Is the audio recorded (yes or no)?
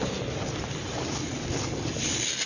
yes